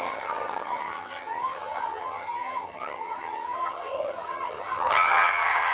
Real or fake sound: fake